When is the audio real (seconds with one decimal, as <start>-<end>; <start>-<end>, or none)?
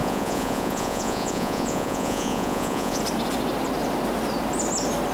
3.0-5.1